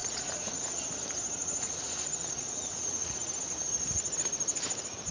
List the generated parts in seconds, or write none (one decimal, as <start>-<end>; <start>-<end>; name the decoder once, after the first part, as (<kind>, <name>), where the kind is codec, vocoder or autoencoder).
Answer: 0.0-0.8 (vocoder, Vocos); 1.4-3.3